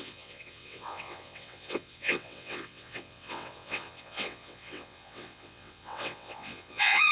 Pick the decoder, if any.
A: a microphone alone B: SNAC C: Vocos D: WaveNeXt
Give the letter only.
D